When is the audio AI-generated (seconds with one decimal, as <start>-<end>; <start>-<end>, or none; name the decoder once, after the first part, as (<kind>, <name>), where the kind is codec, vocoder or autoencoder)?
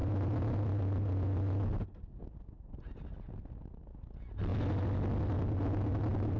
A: none